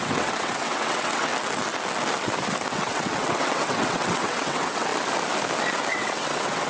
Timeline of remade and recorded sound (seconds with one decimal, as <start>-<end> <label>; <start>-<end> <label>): 0.0-1.3 remade; 1.3-2.7 recorded; 2.7-4.9 remade; 4.9-5.9 recorded; 5.9-6.7 remade